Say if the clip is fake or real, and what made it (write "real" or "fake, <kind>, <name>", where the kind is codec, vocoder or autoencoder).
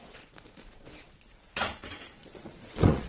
fake, vocoder, Vocos